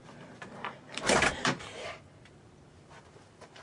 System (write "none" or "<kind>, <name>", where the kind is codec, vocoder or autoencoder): vocoder, BigVGAN v2